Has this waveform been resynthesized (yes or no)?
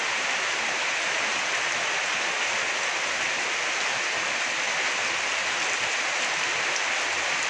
no